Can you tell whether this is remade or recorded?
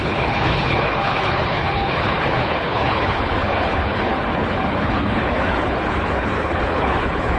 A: remade